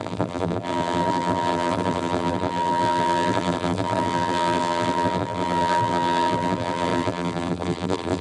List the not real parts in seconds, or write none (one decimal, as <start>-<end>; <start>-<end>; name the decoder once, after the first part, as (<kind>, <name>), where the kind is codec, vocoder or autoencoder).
0.0-8.2 (vocoder, BigVGAN v2)